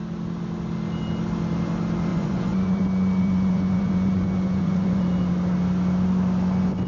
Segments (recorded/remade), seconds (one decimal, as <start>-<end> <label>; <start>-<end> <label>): 0.0-2.1 recorded; 2.1-5.0 remade; 5.0-6.9 recorded